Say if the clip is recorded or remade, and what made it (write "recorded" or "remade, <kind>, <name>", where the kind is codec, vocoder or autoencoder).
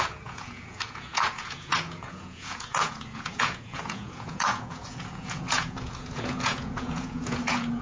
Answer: remade, vocoder, Vocos